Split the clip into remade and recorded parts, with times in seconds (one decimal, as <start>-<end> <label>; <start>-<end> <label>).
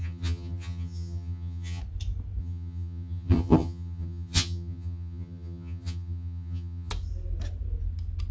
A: 0.0-1.8 remade; 1.8-2.4 recorded; 2.4-6.9 remade; 6.9-8.3 recorded